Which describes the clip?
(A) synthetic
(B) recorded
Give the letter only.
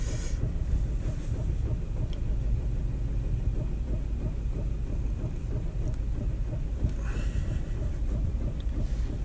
B